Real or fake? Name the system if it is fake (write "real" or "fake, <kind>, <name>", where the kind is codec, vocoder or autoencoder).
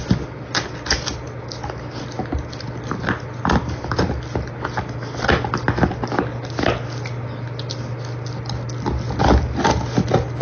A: real